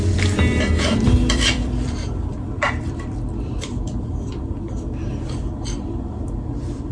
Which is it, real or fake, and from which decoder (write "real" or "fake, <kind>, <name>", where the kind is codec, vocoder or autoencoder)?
fake, vocoder, BigVGAN v2